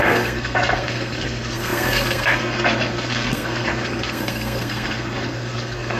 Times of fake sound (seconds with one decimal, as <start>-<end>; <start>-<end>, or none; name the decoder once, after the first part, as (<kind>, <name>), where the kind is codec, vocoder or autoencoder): 0.0-6.0 (codec, SNAC)